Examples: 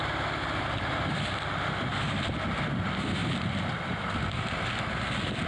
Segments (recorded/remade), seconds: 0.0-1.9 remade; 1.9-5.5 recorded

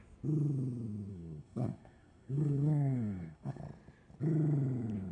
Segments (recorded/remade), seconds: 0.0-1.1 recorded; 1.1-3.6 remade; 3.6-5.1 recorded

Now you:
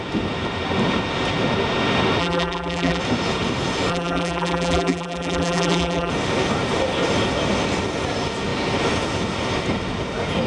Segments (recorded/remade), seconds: 0.0-2.2 recorded; 2.2-3.0 remade; 3.0-3.9 recorded; 3.9-6.1 remade; 6.1-10.5 recorded

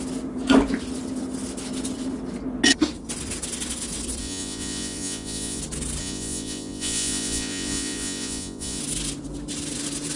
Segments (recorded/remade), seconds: 0.0-4.2 recorded; 4.2-5.6 remade; 5.6-6.0 recorded; 6.0-8.8 remade; 8.8-10.2 recorded

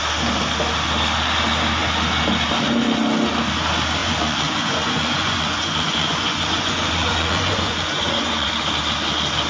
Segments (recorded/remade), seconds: 0.0-4.0 recorded; 4.0-8.5 remade; 8.5-9.5 recorded

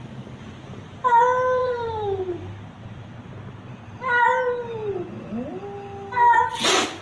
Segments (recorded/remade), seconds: 0.0-1.6 recorded; 1.6-3.3 remade; 3.3-7.0 recorded